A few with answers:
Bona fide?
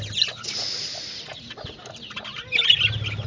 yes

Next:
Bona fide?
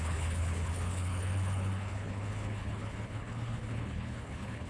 no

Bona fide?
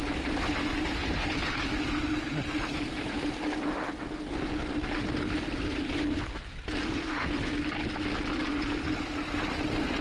yes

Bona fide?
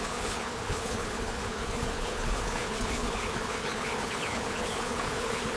no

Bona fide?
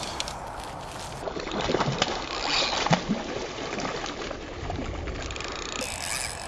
yes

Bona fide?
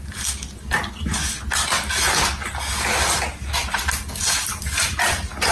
yes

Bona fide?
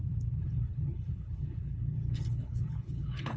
no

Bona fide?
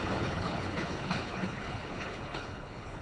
no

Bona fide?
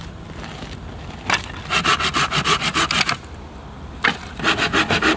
yes